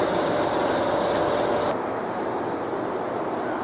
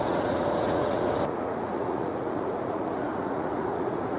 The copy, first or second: second